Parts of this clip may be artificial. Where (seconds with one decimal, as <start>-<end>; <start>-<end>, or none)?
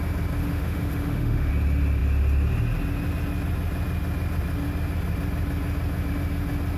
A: 0.4-1.5